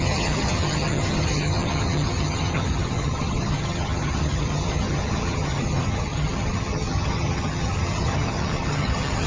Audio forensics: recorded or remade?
remade